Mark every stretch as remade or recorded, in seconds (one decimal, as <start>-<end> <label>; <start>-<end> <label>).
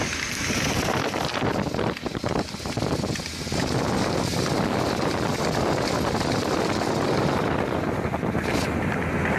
0.0-1.5 recorded; 1.5-2.2 remade; 2.2-9.4 recorded